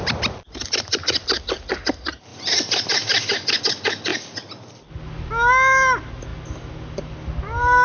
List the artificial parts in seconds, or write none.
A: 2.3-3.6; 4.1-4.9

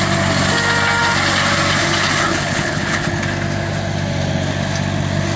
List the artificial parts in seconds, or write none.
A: 2.3-3.2

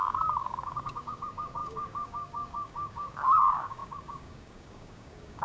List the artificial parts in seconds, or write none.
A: 0.0-5.4

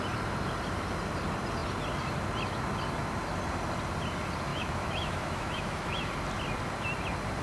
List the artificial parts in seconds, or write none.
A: 4.5-6.0

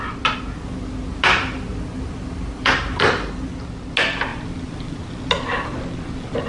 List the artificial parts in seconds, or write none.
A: 1.7-2.8; 4.3-5.0

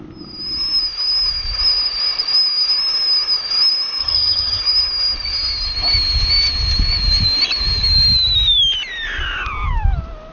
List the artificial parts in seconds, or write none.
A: 4.0-4.6

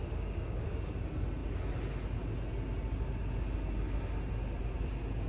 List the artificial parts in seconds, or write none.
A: 0.0-0.9